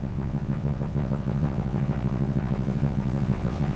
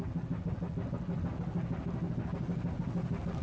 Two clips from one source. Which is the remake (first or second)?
first